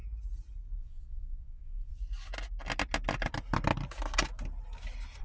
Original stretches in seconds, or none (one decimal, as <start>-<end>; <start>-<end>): 0.0-0.8; 1.9-5.2